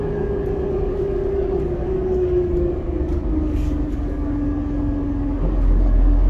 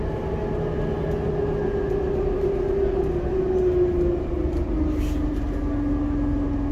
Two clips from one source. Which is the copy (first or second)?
first